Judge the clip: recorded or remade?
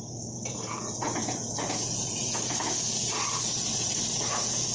remade